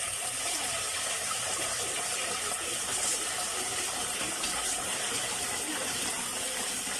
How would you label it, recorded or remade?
remade